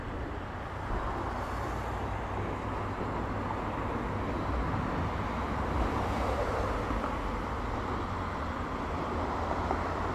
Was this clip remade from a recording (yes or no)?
no